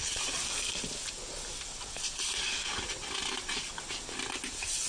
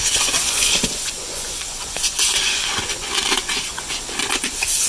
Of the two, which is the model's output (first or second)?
second